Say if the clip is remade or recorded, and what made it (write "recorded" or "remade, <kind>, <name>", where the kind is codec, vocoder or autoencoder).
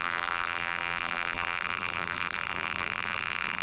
remade, vocoder, BigVGAN v2